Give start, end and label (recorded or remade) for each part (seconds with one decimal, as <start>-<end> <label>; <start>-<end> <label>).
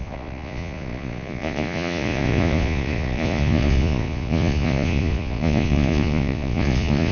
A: 0.0-7.1 remade